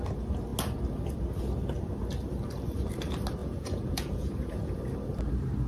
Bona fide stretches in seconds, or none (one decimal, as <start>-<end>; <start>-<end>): 0.0-3.4; 4.8-5.7